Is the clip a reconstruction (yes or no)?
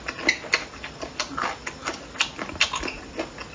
no